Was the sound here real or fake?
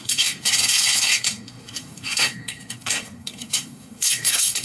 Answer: fake